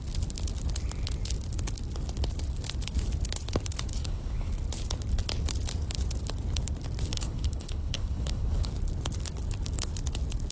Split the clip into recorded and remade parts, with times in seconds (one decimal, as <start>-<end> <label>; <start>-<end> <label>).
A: 0.0-3.9 recorded; 3.9-4.5 remade; 4.5-7.1 recorded; 7.1-8.7 remade; 8.7-10.5 recorded